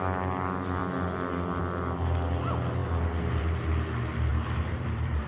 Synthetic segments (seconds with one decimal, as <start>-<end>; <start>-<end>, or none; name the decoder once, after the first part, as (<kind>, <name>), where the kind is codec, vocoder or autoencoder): 4.3-5.3 (vocoder, BigVGAN v2)